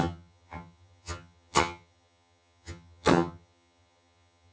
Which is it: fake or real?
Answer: fake